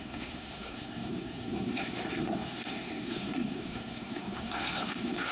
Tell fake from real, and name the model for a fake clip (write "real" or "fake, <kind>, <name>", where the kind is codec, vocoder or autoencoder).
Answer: fake, codec, SNAC